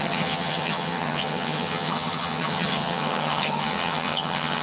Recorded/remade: remade